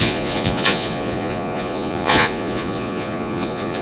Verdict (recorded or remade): remade